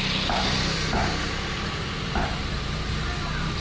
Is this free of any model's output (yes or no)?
yes